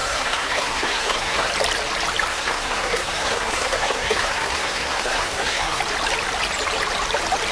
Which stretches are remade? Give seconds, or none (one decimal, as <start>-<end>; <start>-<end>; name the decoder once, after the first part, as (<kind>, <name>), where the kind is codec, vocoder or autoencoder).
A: 0.0-1.5 (codec, SNAC); 2.3-5.8